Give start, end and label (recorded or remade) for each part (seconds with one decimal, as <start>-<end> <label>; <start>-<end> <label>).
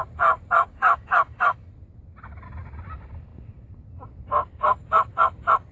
0.0-0.7 recorded; 0.7-1.7 remade; 1.7-5.7 recorded